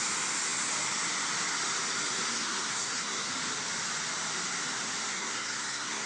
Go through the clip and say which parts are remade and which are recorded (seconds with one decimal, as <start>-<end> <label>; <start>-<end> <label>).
0.0-2.3 recorded; 2.3-3.3 remade; 3.3-5.1 recorded; 5.1-6.1 remade